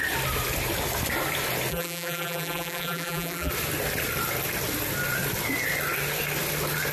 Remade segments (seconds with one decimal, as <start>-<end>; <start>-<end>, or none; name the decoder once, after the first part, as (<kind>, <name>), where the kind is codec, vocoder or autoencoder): 1.7-3.5 (vocoder, BigVGAN v2)

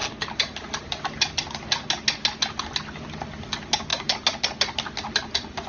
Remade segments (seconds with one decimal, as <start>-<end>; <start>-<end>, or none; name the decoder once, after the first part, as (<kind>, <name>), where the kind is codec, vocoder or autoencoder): none

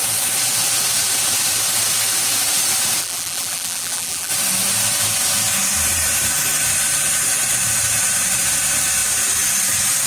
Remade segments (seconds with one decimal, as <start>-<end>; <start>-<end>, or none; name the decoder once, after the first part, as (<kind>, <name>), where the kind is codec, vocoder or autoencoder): 3.0-4.3 (vocoder, BigVGAN v2)

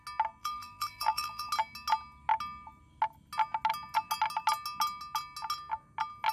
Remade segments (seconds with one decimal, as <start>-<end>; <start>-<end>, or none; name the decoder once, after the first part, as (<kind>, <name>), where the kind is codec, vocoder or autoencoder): 0.4-1.5 (vocoder, BigVGAN v2)

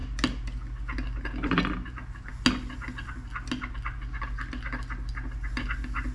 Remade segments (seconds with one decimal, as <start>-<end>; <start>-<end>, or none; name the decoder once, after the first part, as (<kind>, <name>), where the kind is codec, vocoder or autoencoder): none